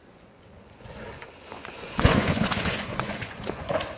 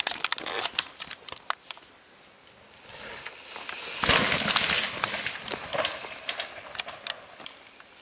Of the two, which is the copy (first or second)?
first